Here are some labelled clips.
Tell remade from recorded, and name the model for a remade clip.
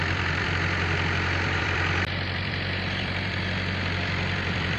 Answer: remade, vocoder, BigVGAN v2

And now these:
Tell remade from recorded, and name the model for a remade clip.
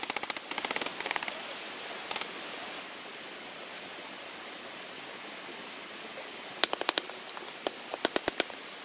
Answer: recorded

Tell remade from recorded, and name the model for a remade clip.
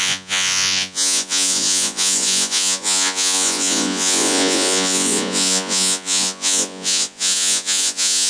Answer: remade, vocoder, Vocos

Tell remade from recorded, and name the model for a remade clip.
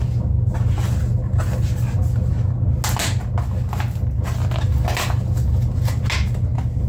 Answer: recorded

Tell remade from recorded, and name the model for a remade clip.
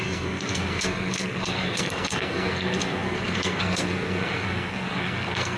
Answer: remade, codec, SNAC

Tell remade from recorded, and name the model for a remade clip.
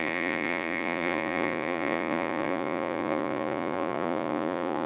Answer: remade, vocoder, Vocos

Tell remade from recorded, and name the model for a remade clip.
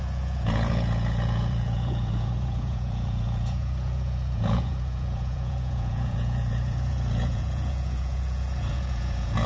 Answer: remade, vocoder, Vocos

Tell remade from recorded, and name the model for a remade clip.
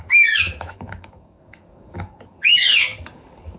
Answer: remade, codec, DAC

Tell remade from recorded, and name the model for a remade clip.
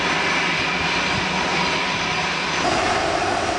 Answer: recorded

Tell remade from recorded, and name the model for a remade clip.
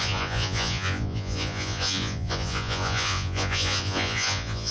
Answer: remade, vocoder, Vocos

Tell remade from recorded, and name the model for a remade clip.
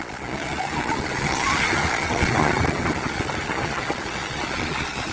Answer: remade, vocoder, Vocos